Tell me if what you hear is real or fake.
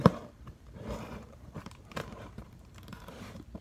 fake